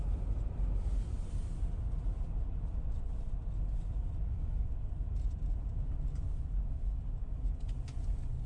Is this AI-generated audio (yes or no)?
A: no